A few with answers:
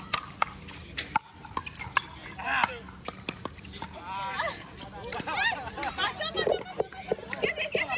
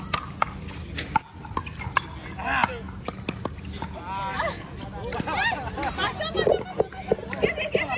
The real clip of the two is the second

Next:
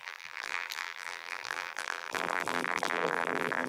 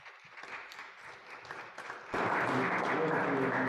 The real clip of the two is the second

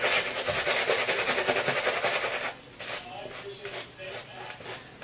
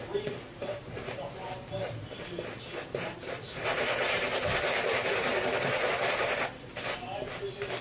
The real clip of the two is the first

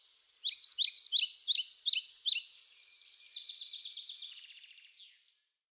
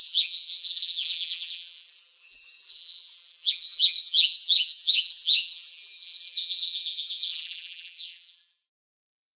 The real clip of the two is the first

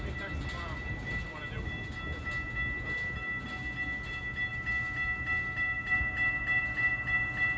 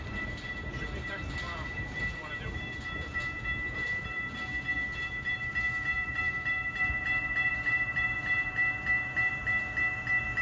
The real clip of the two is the first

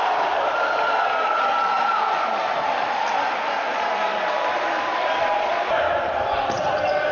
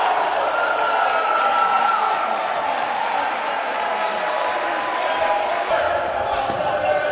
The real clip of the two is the second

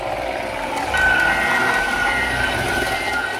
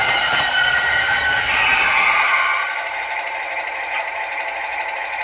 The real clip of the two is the first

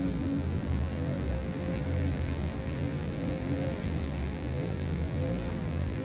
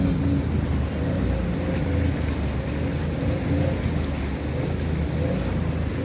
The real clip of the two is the second